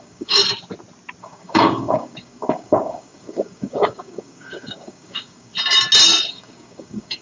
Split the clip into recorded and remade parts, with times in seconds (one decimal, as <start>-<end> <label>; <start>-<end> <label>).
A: 0.0-0.4 remade; 0.4-1.2 recorded; 1.2-5.5 remade; 5.5-6.3 recorded; 6.3-7.2 remade